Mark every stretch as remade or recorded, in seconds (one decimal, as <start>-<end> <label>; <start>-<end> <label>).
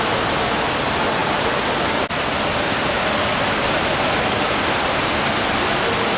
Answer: 0.0-1.2 recorded; 1.2-2.0 remade; 2.0-6.2 recorded